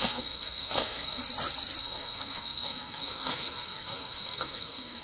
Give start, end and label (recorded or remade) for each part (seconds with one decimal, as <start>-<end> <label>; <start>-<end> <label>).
0.0-1.2 remade; 1.2-1.8 recorded; 1.8-5.0 remade